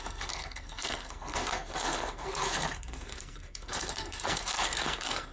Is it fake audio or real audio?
fake